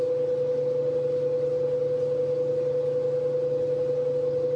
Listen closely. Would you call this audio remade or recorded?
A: recorded